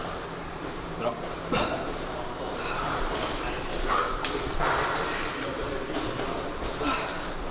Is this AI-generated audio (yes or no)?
yes